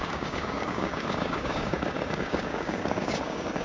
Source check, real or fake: fake